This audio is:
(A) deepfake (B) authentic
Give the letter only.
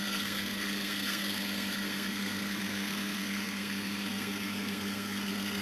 A